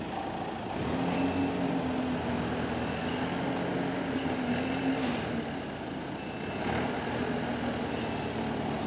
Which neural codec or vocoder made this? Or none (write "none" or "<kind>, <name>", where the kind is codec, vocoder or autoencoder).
none